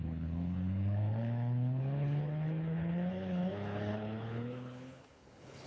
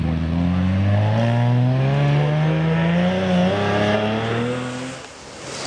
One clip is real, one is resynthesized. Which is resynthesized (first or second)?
first